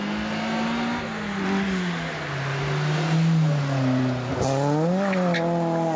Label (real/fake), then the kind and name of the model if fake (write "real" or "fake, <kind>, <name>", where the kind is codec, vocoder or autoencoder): real